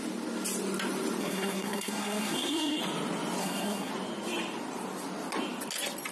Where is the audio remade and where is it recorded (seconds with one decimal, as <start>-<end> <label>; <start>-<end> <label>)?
0.0-1.2 recorded; 1.2-2.8 remade; 2.8-3.4 recorded; 3.4-3.9 remade; 3.9-6.1 recorded